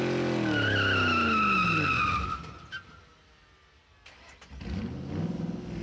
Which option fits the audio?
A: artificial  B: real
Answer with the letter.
B